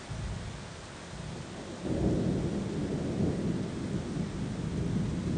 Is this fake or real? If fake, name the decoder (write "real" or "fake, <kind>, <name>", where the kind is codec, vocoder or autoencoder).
real